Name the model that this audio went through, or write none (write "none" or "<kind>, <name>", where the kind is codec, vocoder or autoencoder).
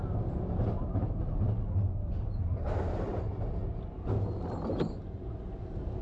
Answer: none